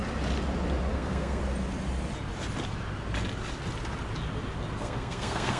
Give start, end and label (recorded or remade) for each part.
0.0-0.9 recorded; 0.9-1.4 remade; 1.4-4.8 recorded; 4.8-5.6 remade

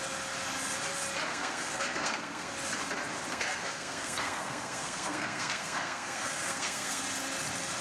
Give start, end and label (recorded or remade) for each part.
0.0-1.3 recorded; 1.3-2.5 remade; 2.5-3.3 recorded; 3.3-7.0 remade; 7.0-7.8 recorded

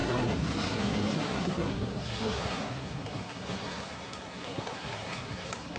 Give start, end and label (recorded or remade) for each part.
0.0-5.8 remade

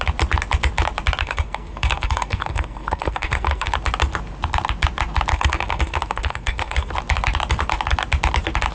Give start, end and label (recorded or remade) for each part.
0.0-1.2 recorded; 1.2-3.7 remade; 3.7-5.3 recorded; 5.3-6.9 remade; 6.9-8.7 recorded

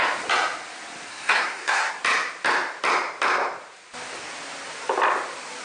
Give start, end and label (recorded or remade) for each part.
0.0-1.1 recorded; 1.1-1.9 remade; 1.9-5.6 recorded

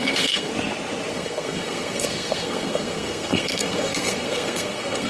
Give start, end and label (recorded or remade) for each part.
0.0-0.5 remade; 0.5-1.1 recorded; 1.1-5.1 remade

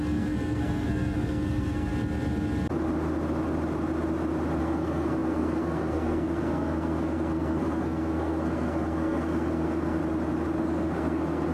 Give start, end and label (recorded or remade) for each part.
0.0-1.9 remade; 1.9-4.6 recorded; 4.6-10.0 remade; 10.0-10.6 recorded; 10.6-11.5 remade